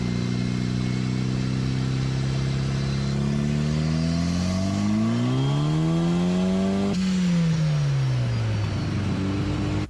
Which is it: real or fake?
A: real